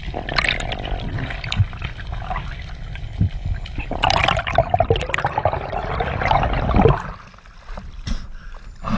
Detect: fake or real real